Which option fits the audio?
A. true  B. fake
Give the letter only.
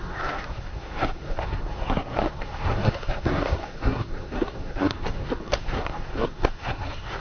B